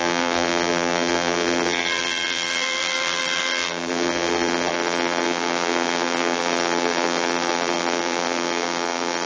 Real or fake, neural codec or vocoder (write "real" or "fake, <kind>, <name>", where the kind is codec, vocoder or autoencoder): fake, vocoder, BigVGAN v2